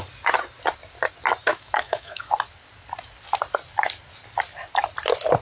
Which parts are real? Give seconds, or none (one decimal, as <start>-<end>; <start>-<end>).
0.0-1.5; 2.3-5.4